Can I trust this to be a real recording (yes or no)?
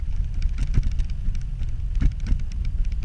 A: yes